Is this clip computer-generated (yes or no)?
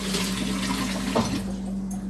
no